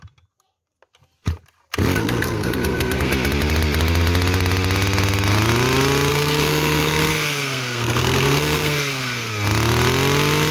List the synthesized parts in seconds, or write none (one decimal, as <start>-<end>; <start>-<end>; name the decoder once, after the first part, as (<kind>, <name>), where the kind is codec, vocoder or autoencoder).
2.0-3.1 (codec, SNAC); 6.1-9.3